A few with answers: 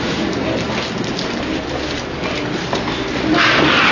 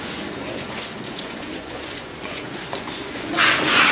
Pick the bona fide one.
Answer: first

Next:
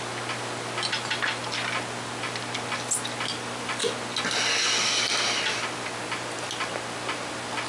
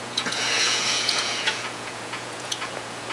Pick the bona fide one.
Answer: first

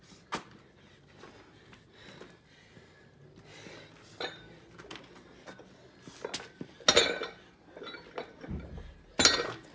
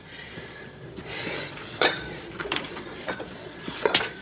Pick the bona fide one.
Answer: first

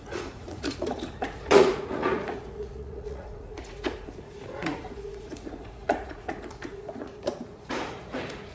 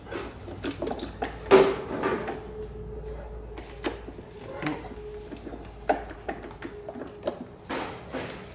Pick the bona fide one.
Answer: second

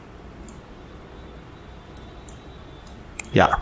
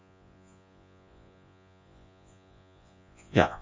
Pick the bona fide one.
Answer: first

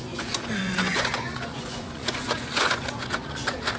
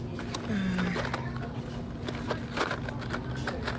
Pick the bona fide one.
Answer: second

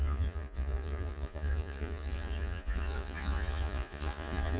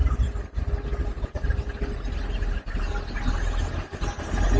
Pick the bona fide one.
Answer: second